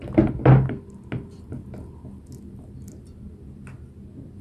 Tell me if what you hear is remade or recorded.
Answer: recorded